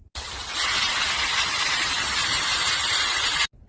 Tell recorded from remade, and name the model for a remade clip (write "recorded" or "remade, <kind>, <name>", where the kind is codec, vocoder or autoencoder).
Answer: recorded